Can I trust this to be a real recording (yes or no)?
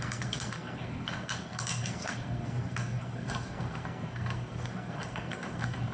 no